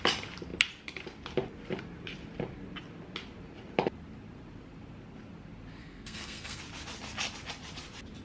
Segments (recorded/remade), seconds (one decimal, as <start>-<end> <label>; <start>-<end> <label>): 0.0-5.8 recorded; 5.8-6.6 remade; 6.6-8.2 recorded